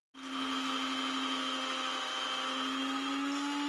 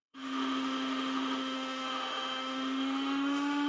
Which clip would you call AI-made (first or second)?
second